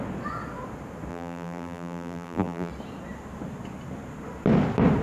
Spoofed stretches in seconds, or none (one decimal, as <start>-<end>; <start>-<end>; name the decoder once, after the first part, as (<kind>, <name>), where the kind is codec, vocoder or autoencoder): 1.1-2.7 (vocoder, BigVGAN v2)